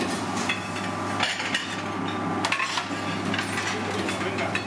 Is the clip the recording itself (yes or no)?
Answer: yes